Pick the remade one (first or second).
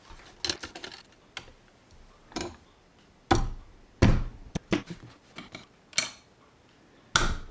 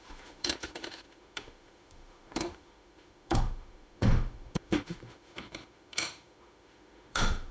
second